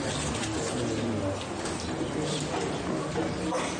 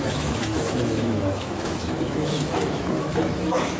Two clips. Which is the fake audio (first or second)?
second